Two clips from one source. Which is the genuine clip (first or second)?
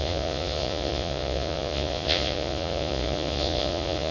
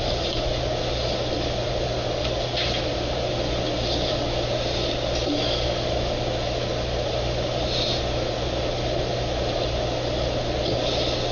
second